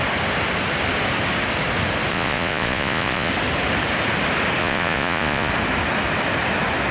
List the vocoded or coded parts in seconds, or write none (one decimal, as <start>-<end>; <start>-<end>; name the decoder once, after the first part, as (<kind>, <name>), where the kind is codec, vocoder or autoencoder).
2.1-3.3 (vocoder, Vocos); 4.6-5.5